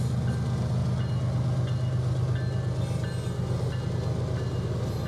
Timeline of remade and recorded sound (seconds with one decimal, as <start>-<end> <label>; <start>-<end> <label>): 0.0-5.1 recorded